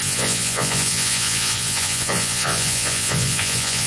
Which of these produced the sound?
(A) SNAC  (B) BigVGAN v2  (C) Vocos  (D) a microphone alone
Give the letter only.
C